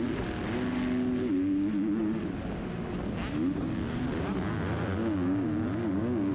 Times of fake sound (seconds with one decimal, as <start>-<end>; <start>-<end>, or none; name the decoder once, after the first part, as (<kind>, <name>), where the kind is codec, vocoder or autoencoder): 5.0-6.3 (codec, DAC)